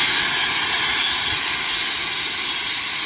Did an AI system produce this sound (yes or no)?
no